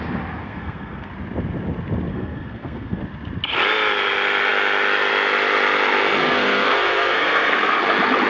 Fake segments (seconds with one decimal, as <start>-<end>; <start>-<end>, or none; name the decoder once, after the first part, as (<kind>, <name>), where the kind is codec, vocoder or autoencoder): 0.4-1.1 (codec, SNAC); 2.1-3.0; 6.2-7.8